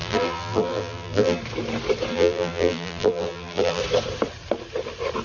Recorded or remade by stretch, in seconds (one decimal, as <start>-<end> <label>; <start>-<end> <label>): 0.0-1.4 remade; 1.4-2.1 recorded; 2.1-3.8 remade; 3.8-5.2 recorded